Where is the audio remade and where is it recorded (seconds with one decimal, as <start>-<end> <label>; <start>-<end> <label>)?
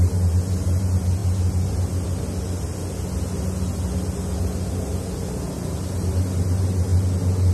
0.0-7.5 recorded